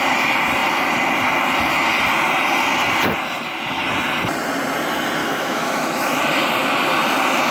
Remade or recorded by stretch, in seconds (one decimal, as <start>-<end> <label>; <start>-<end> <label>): 0.0-5.2 recorded; 5.2-6.2 remade; 6.2-7.5 recorded